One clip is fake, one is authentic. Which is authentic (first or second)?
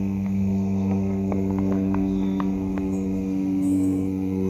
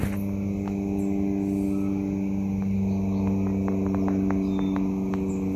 second